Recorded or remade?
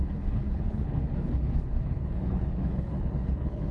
remade